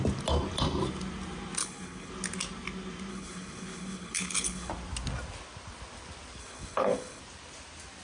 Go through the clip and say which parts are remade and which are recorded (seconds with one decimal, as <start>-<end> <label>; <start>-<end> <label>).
0.0-1.6 recorded; 1.6-2.1 remade; 2.1-3.1 recorded; 3.1-4.7 remade; 4.7-6.4 recorded; 6.4-7.2 remade; 7.2-8.0 recorded